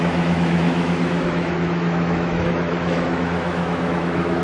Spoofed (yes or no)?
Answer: yes